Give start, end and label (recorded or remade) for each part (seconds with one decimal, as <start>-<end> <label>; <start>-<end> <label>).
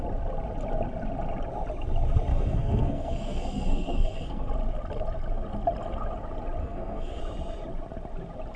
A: 0.0-2.3 recorded; 2.3-4.5 remade; 4.5-6.6 recorded; 6.6-7.2 remade; 7.2-8.6 recorded